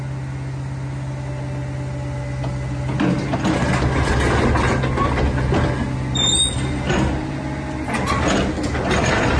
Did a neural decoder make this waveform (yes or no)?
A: no